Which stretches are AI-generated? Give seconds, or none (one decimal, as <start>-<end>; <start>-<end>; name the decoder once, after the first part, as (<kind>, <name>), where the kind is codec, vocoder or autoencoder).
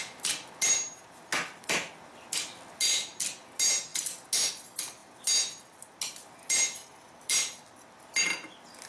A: none